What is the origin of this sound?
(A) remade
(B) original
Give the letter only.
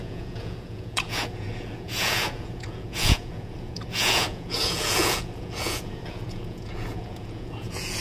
A